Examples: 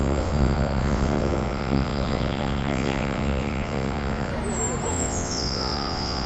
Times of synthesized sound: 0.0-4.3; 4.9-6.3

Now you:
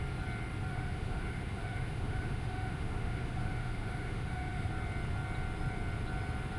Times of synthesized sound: 0.7-4.7

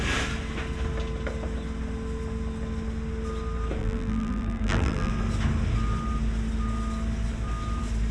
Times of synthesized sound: 3.8-5.1